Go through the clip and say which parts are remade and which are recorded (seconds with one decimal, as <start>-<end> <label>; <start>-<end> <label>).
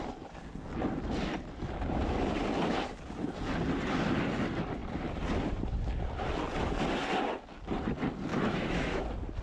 0.0-8.3 recorded; 8.3-9.0 remade; 9.0-9.4 recorded